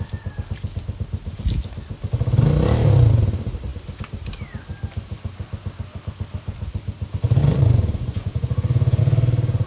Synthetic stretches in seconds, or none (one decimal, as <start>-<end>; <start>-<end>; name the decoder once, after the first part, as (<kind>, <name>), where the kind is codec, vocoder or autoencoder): 7.4-9.0 (vocoder, Vocos)